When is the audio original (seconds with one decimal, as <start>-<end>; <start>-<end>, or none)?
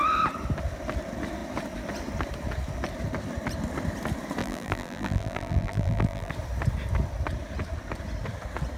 0.0-4.4; 6.3-8.8